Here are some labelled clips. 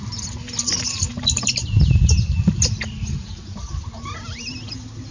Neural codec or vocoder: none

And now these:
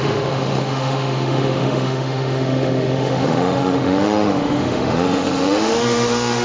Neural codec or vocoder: autoencoder, DAC-VAE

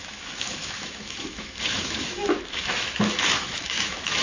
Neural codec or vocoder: autoencoder, DAC-VAE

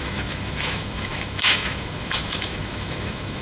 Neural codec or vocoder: autoencoder, DAC-VAE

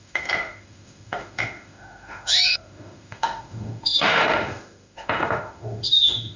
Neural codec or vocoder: autoencoder, DAC-VAE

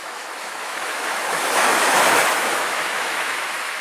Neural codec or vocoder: autoencoder, DAC-VAE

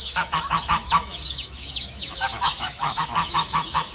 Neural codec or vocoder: autoencoder, DAC-VAE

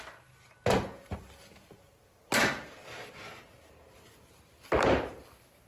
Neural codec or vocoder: none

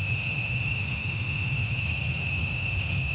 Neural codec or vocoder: autoencoder, DAC-VAE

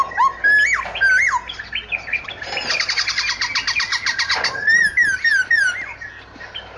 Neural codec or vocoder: none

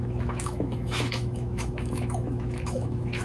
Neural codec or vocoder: autoencoder, DAC-VAE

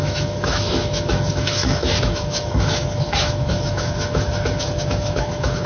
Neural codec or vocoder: autoencoder, DAC-VAE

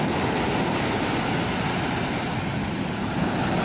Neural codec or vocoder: none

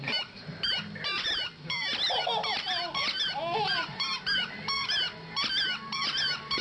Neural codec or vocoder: none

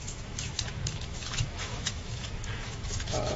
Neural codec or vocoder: autoencoder, DAC-VAE